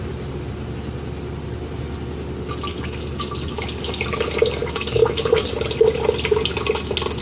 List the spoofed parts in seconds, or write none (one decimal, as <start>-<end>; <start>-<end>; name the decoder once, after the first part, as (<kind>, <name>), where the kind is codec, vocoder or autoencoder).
2.7-3.9 (codec, DAC); 4.6-5.5